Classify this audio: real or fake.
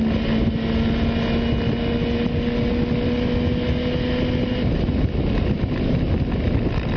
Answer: real